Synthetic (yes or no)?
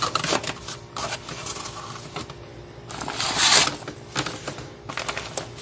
no